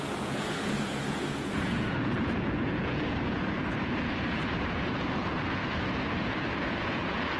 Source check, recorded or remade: remade